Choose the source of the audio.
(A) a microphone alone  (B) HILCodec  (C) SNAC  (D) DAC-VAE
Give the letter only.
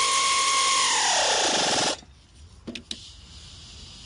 A